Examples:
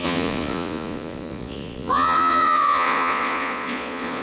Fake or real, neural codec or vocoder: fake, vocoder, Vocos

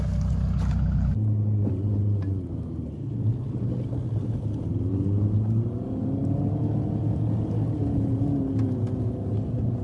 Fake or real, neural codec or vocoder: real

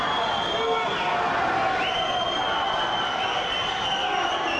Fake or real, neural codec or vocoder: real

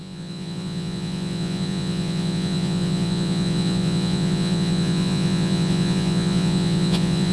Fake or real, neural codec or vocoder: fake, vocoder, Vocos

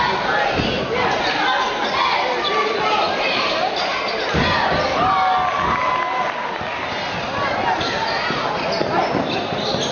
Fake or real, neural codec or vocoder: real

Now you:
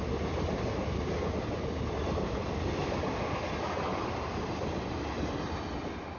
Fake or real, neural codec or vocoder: real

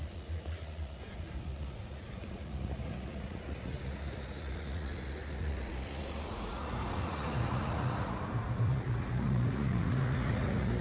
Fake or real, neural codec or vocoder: fake, vocoder, Vocos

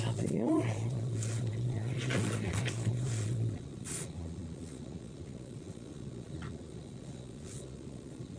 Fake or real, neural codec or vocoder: fake, vocoder, Vocos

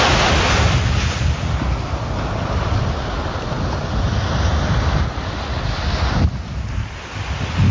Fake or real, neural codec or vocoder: real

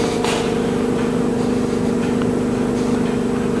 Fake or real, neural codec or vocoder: real